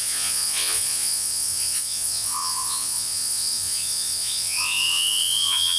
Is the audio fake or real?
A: fake